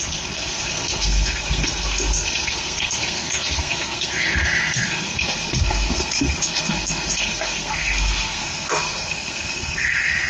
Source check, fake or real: fake